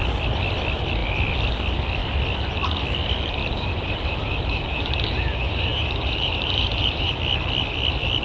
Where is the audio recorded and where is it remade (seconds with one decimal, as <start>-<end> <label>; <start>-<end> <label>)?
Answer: 0.0-3.4 recorded; 3.4-7.1 remade; 7.1-8.2 recorded

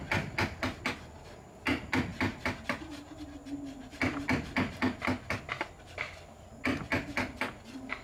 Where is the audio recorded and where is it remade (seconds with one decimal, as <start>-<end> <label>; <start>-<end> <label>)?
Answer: 0.0-2.1 recorded; 2.1-3.2 remade; 3.2-8.0 recorded